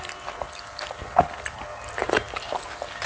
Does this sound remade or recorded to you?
recorded